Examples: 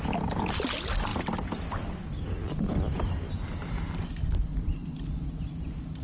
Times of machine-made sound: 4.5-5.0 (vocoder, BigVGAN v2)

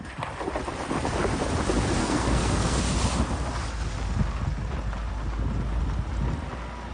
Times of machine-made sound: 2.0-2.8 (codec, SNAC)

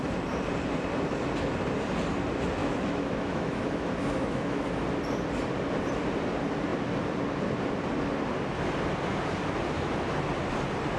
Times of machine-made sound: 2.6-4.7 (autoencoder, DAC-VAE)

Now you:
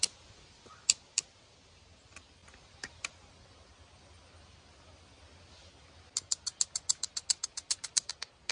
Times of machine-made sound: 7.5-8.1 (vocoder, BigVGAN v2)

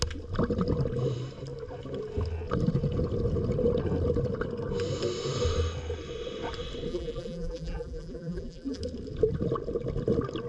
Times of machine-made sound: 6.9-8.8 (vocoder, BigVGAN v2)